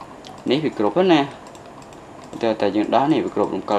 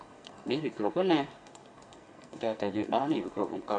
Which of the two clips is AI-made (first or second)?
second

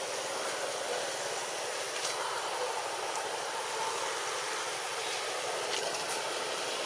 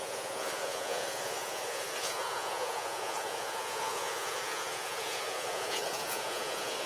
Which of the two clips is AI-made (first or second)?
second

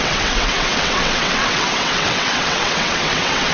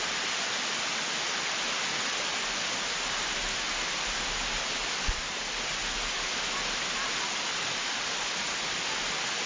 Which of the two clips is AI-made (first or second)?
first